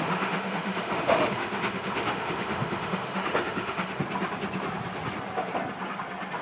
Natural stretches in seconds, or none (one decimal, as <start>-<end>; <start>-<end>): 4.0-6.4